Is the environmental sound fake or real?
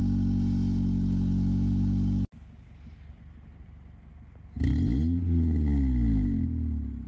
real